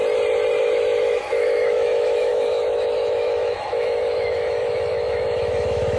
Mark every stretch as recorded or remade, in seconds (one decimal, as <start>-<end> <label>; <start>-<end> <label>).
0.0-0.6 recorded; 0.6-6.0 remade